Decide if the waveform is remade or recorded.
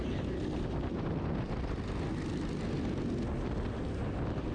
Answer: recorded